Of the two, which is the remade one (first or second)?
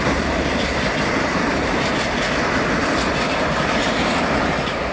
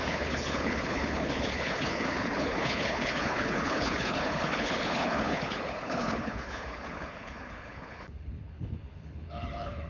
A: second